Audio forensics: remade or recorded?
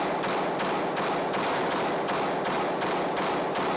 recorded